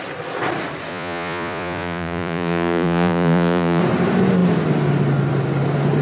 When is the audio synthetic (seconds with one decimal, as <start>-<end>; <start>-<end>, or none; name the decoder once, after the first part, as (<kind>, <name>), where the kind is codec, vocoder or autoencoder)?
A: 0.9-3.8 (vocoder, Vocos)